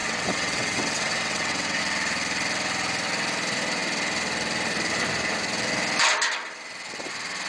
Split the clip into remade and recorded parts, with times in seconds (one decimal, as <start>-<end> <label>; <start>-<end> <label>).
0.0-1.8 remade; 1.8-7.5 recorded